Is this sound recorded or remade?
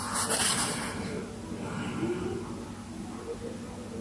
recorded